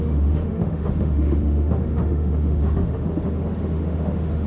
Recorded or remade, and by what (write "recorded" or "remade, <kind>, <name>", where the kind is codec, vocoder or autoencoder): remade, autoencoder, DAC-VAE